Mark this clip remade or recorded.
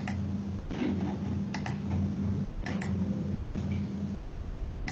recorded